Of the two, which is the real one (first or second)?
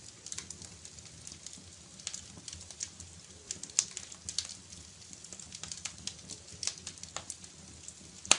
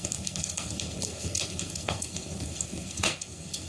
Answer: first